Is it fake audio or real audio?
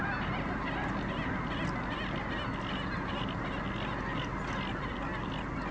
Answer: real